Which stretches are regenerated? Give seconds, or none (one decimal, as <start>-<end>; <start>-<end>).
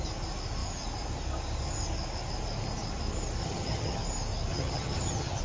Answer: 3.4-4.0; 4.5-5.4